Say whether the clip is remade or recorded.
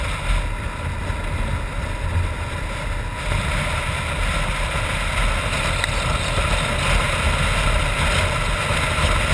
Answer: recorded